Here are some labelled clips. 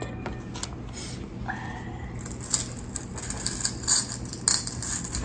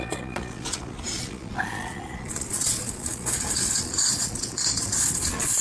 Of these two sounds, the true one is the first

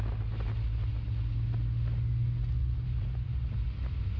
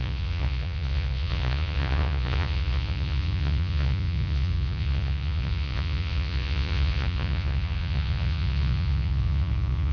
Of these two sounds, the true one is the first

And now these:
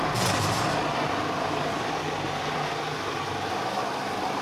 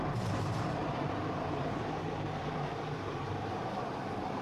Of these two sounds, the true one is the first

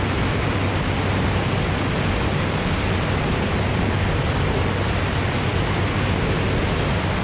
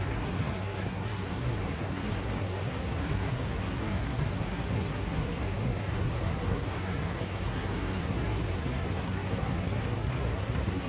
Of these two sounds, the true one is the first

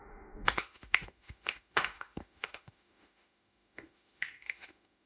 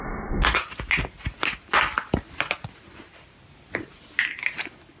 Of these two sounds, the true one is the second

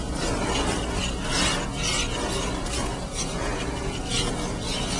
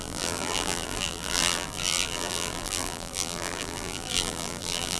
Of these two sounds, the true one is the first